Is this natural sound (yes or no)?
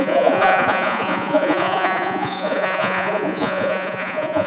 no